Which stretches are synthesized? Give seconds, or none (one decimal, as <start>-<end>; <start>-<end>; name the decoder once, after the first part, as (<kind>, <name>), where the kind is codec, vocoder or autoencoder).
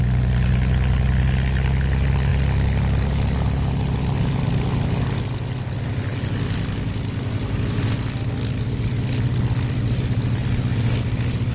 none